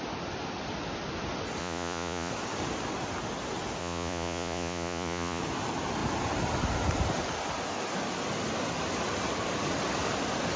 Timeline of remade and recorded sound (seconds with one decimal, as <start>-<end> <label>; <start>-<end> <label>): 0.0-1.6 recorded; 1.6-2.3 remade; 2.3-3.8 recorded; 3.8-5.4 remade; 5.4-10.6 recorded